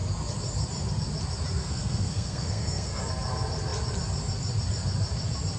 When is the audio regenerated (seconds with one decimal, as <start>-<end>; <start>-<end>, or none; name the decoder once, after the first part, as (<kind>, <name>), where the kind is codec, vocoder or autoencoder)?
1.6-3.0 (codec, SNAC)